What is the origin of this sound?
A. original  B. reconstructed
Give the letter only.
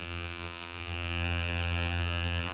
B